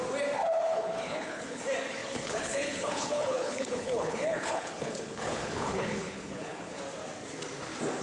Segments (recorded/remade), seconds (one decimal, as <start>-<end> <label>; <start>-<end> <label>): 0.0-0.6 recorded; 0.6-1.6 remade; 1.6-2.0 recorded; 2.0-6.8 remade; 6.8-8.0 recorded